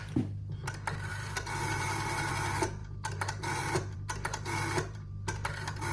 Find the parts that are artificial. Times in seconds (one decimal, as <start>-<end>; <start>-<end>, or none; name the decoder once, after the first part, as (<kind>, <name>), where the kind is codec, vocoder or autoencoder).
1.1-2.3 (vocoder, BigVGAN v2); 2.8-5.1